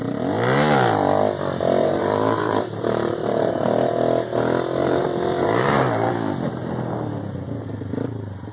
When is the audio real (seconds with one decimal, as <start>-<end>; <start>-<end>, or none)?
0.0-1.8; 3.9-4.8; 6.1-8.5